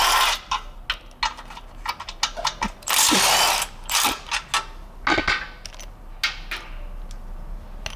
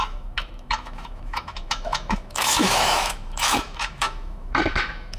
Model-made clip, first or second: second